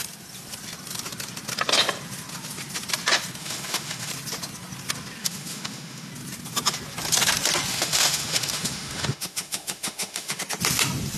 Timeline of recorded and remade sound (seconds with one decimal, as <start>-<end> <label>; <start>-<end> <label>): 0.0-3.4 recorded; 3.4-4.1 remade; 4.1-5.2 recorded; 5.2-6.1 remade; 6.1-7.7 recorded; 7.7-10.4 remade; 10.4-11.2 recorded